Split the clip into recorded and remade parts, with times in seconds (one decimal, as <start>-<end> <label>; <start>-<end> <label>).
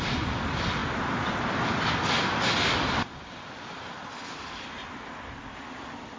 0.0-6.2 recorded